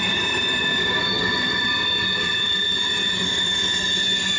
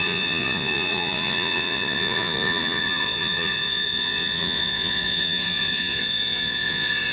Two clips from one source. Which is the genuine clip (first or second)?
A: first